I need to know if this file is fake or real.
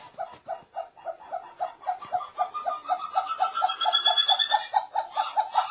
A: real